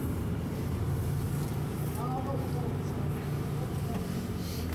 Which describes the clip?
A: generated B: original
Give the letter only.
B